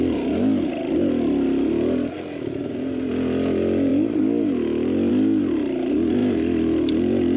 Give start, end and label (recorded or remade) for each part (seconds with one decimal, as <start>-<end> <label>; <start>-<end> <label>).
0.0-7.4 recorded